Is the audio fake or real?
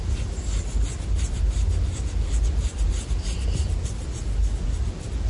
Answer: real